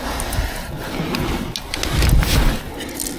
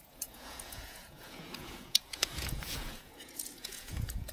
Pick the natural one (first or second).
first